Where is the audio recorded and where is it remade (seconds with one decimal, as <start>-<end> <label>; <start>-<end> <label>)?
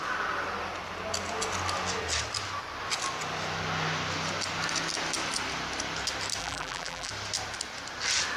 0.0-6.4 recorded; 6.4-7.1 remade; 7.1-8.4 recorded